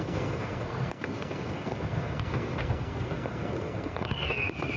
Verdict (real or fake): fake